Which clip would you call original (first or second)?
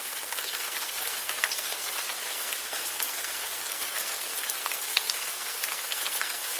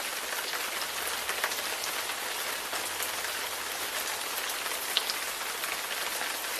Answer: second